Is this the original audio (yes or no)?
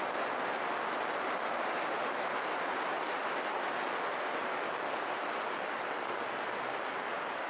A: yes